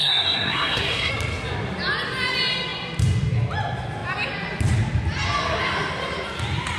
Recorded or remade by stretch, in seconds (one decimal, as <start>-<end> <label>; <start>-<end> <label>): 0.0-1.1 remade; 1.1-6.8 recorded